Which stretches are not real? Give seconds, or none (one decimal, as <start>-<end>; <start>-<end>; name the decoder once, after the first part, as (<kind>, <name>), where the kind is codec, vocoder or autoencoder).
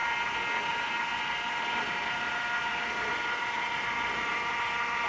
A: none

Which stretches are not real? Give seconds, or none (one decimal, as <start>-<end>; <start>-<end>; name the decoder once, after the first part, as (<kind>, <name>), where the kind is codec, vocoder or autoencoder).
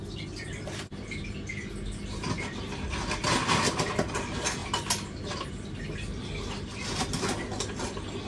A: none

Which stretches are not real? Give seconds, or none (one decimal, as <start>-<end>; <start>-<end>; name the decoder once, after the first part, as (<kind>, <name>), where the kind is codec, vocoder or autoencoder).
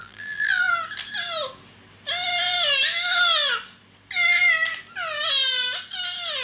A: 0.0-0.6 (vocoder, BigVGAN v2)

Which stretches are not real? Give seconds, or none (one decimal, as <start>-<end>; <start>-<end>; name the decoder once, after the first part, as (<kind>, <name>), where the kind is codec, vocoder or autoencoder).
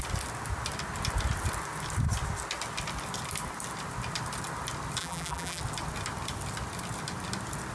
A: 5.0-5.6 (vocoder, BigVGAN v2)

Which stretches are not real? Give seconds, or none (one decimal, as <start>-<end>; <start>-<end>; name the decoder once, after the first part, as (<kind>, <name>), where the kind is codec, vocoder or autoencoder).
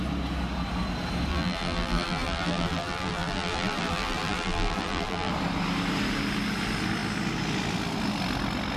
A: 1.3-5.3 (vocoder, BigVGAN v2)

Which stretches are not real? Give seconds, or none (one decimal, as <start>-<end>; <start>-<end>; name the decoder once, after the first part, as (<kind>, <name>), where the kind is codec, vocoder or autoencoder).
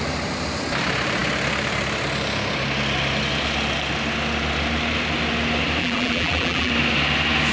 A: 5.8-6.7 (vocoder, BigVGAN v2)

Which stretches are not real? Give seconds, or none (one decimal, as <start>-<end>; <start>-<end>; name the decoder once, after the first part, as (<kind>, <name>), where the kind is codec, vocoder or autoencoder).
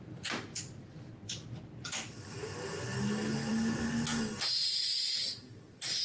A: none